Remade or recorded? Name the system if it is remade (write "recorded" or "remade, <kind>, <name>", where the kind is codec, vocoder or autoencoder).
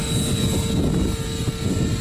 recorded